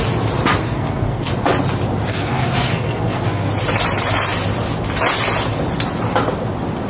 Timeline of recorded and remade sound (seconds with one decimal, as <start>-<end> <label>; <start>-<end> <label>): 0.0-0.6 recorded; 0.6-1.3 remade; 1.3-2.1 recorded; 2.1-3.5 remade; 3.5-6.9 recorded